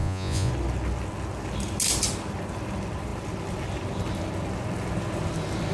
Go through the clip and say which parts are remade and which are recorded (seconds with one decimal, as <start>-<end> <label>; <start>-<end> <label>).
0.0-0.5 remade; 0.5-5.7 recorded